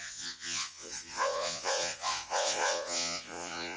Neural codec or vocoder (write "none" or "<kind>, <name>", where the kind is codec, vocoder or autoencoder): vocoder, Vocos